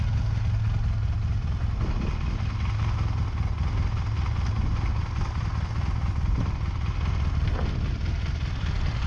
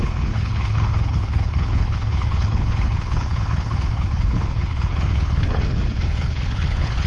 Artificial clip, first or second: second